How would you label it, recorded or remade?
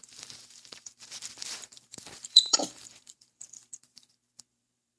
remade